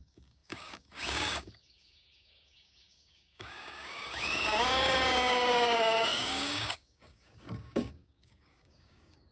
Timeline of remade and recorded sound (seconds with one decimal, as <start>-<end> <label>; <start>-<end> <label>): 0.0-9.3 remade